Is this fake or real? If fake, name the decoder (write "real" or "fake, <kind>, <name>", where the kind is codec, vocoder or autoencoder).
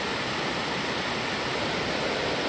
real